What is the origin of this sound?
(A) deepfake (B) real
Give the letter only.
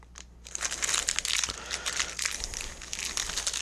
B